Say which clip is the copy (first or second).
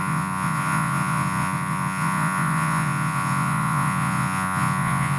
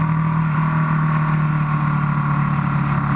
first